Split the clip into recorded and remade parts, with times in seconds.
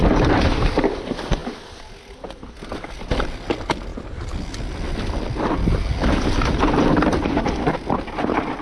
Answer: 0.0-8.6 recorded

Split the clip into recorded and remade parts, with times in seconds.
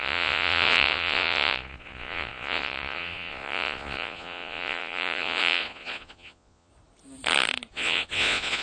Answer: 0.0-6.7 remade; 6.7-7.7 recorded; 7.7-8.6 remade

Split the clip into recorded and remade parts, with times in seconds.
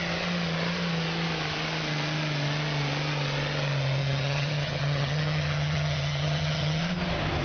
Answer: 0.0-4.0 recorded; 4.0-6.8 remade; 6.8-7.4 recorded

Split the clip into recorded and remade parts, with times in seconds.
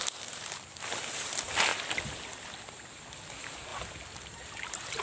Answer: 0.0-5.0 recorded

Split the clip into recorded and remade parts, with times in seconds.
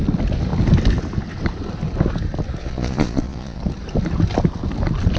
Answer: 0.0-2.6 recorded; 2.6-3.6 remade; 3.6-5.2 recorded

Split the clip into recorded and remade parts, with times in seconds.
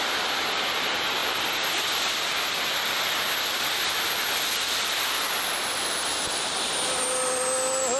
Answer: 0.0-8.0 recorded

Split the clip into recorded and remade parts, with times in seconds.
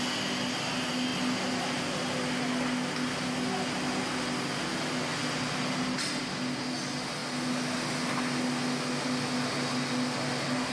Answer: 0.0-10.7 recorded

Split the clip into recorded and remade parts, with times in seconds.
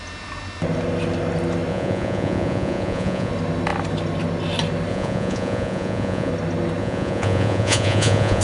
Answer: 0.0-1.7 recorded; 1.7-3.3 remade; 3.3-4.9 recorded; 4.9-6.3 remade; 6.3-6.8 recorded; 6.8-8.4 remade